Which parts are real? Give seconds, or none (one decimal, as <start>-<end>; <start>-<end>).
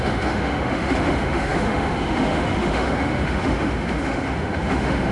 none